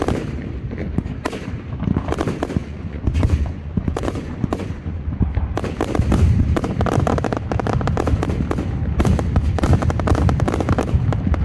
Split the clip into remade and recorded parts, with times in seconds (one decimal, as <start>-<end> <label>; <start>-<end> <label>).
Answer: 0.0-2.6 recorded; 2.6-5.2 remade; 5.2-11.4 recorded